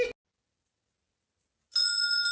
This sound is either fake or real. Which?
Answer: real